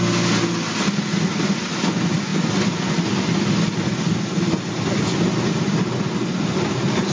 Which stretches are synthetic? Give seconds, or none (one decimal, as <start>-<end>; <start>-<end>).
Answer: none